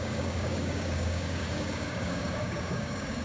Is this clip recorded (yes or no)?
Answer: no